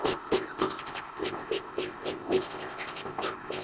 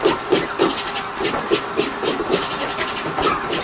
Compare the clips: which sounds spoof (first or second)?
first